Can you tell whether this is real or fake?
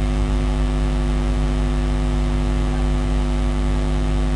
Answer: real